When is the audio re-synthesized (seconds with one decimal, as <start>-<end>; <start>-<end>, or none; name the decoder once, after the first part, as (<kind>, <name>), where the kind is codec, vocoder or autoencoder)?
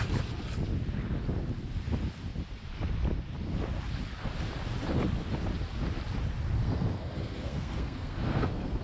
6.6-8.8 (codec, SNAC)